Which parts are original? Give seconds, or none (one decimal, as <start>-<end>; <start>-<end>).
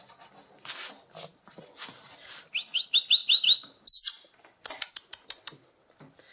0.0-6.3